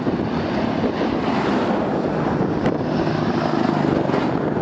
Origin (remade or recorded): recorded